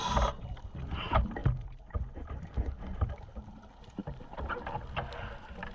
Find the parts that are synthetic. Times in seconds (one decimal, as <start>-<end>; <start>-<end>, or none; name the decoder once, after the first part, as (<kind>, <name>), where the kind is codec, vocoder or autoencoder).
1.4-4.5 (vocoder, BigVGAN v2)